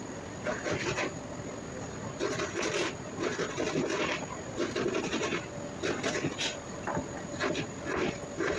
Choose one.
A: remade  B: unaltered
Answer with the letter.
B